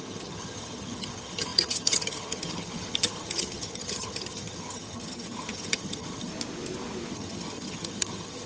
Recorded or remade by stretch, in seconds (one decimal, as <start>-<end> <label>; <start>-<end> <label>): 0.0-6.3 remade; 6.3-7.1 recorded; 7.1-8.5 remade